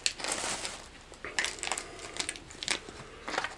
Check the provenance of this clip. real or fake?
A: real